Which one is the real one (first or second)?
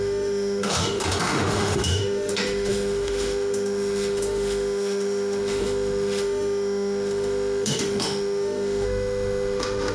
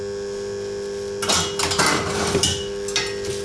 second